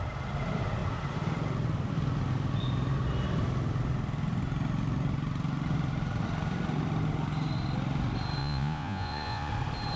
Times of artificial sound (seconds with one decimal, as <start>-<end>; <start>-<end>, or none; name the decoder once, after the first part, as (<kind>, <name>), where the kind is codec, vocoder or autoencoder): 8.4-9.5 (vocoder, Vocos)

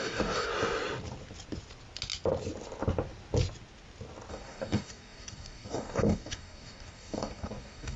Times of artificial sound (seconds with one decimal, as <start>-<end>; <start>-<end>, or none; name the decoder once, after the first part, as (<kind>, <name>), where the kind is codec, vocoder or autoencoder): 0.0-0.5 (codec, DAC); 4.3-8.0

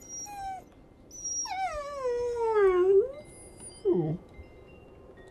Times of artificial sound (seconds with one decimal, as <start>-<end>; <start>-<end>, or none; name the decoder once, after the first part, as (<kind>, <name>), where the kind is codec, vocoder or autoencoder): none

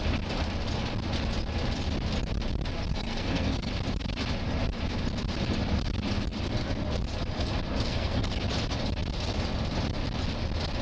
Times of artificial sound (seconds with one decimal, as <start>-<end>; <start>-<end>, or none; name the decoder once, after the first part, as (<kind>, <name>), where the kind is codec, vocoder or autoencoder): 2.9-3.7 (codec, SNAC); 7.7-8.4

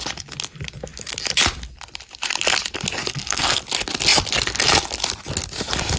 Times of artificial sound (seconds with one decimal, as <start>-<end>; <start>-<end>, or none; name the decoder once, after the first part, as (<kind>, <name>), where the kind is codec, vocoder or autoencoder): 3.0-3.6 (codec, SNAC)

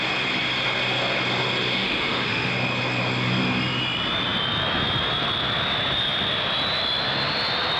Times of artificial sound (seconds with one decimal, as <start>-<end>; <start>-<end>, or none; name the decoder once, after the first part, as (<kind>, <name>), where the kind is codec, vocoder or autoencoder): 1.8-2.5 (autoencoder, DAC-VAE)

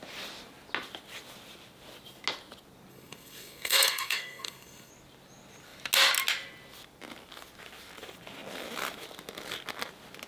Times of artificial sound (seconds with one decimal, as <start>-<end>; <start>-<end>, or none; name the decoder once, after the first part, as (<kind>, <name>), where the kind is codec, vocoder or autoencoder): 2.9-4.9 (codec, SNAC)

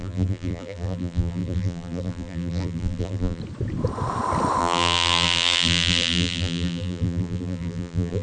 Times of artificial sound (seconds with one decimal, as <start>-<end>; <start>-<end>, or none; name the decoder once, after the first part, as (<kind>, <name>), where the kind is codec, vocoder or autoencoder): 0.0-3.4 (vocoder, BigVGAN v2); 4.6-8.2